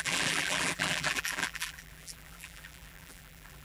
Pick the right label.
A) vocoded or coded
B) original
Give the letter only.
A